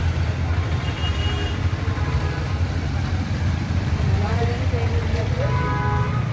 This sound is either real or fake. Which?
real